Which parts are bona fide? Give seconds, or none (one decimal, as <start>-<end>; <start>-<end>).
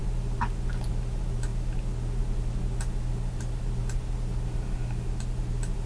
0.0-5.9